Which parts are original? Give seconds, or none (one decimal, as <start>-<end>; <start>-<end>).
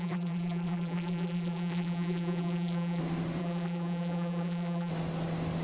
3.0-3.4; 4.9-5.6